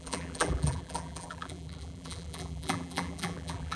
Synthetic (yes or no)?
yes